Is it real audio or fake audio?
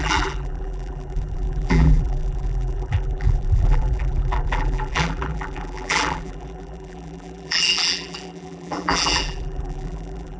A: fake